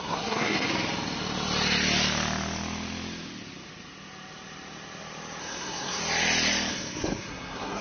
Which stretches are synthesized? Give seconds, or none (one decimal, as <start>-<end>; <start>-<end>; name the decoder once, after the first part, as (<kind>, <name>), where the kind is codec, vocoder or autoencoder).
0.0-0.7 (codec, SNAC); 5.4-6.0; 6.7-7.8